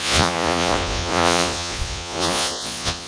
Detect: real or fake fake